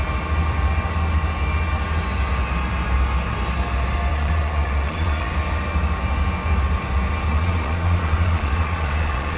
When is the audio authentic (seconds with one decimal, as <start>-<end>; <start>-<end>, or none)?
0.0-4.1; 5.3-7.3